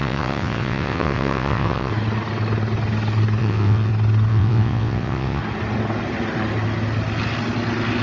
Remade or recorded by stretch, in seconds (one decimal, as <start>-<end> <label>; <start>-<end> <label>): 0.0-1.9 remade; 1.9-3.4 recorded; 3.4-3.9 remade; 3.9-4.3 recorded; 4.3-5.4 remade; 5.4-8.0 recorded